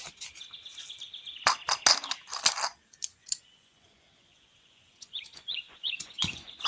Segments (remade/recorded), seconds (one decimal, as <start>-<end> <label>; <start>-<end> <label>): 0.0-3.1 recorded; 3.1-6.7 remade